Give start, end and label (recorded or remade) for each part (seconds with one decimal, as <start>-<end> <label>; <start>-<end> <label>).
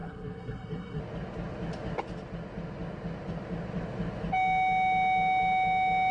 0.0-1.0 remade; 1.0-6.1 recorded